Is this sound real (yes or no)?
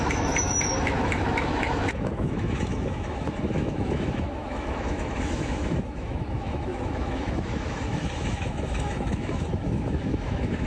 no